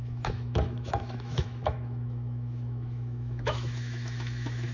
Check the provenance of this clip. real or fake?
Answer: fake